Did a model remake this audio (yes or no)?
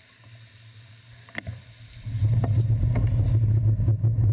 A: no